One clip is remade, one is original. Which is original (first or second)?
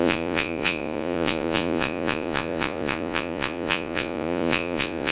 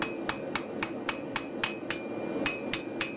second